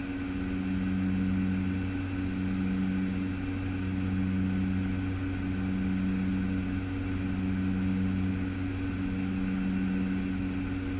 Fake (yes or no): no